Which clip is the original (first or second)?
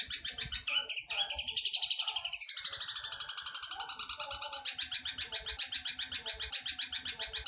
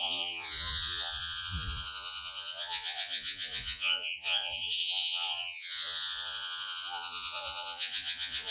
first